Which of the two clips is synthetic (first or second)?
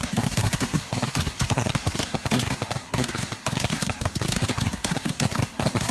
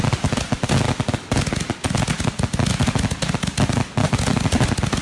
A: first